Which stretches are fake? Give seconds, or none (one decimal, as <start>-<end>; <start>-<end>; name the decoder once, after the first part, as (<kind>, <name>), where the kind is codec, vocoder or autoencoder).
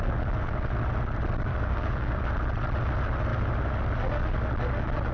1.5-2.2 (codec, DAC)